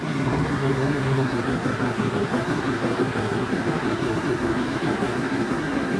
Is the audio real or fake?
fake